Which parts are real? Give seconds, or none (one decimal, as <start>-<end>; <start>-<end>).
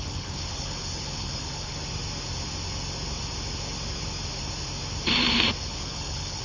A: 1.8-5.6